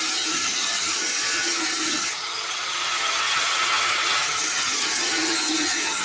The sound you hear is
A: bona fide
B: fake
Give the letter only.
B